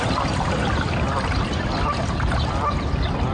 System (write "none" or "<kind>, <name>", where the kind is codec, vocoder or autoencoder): none